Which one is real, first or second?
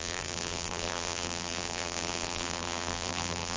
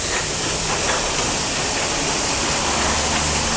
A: second